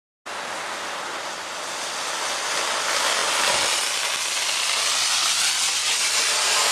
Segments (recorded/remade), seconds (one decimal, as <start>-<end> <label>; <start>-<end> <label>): 0.0-6.7 recorded